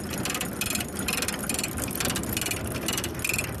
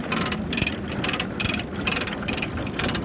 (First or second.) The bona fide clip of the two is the first